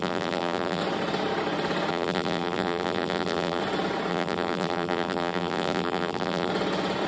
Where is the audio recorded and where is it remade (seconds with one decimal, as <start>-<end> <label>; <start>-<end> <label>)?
0.0-0.8 remade; 0.8-1.9 recorded; 1.9-3.6 remade; 3.6-4.1 recorded; 4.1-6.5 remade; 6.5-7.1 recorded